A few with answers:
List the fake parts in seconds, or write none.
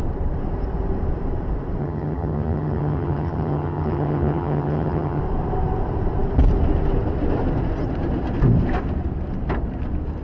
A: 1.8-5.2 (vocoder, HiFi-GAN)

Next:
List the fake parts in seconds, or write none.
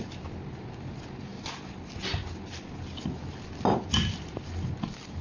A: none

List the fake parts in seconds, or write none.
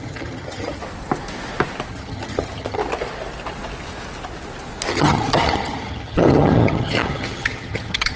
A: 0.0-0.8 (vocoder, HiFi-GAN); 1.9-2.8; 4.9-8.2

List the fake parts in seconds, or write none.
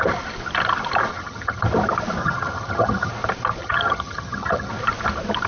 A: 1.1-1.6 (vocoder, HiFi-GAN); 2.2-3.1; 3.6-4.7